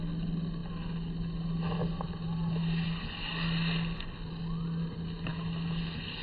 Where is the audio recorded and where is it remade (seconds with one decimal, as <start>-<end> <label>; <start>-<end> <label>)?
0.0-6.2 recorded